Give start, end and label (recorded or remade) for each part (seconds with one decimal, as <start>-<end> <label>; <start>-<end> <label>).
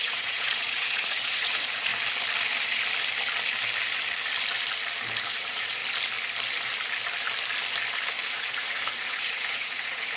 0.0-1.9 remade; 1.9-5.3 recorded; 5.3-5.8 remade; 5.8-8.3 recorded; 8.3-10.2 remade